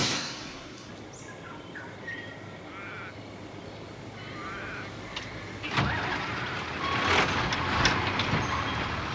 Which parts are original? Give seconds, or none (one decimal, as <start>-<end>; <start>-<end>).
0.9-9.1

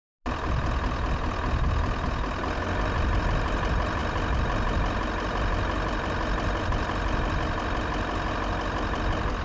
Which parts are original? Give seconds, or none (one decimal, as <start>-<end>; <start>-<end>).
0.0-9.4